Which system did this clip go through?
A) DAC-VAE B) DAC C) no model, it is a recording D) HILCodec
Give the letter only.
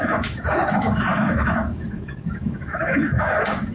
A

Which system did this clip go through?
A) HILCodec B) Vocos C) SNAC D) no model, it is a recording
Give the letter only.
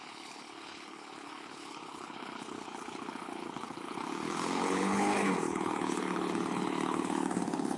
A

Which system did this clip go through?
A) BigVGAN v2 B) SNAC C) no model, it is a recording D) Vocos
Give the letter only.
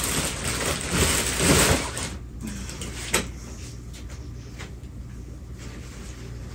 C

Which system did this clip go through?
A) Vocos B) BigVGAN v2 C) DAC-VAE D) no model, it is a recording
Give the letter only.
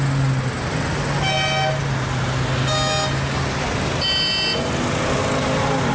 D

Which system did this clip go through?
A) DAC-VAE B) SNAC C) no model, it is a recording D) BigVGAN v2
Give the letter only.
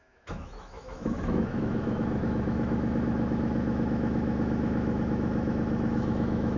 A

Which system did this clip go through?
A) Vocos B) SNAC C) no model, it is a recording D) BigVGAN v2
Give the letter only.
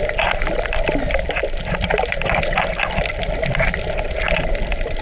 C